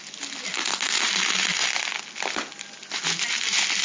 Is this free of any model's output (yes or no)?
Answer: yes